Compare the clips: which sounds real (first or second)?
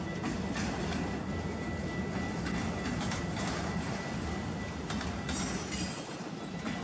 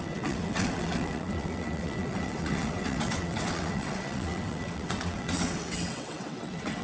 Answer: first